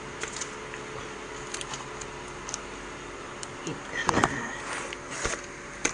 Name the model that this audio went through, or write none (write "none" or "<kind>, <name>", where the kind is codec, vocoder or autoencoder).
none